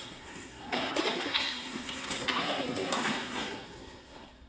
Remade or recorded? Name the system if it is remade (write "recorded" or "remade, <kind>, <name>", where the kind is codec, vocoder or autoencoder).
remade, codec, SNAC